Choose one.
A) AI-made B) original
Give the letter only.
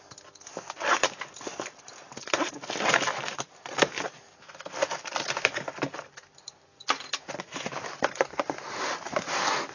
B